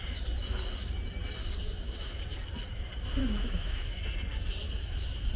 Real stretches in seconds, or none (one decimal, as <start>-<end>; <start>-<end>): 0.0-1.4; 2.2-3.2; 4.0-4.6